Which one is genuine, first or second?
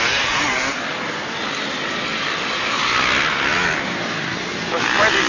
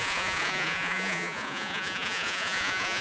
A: first